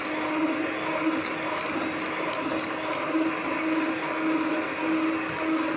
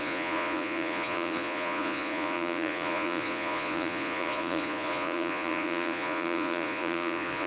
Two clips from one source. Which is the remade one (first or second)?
second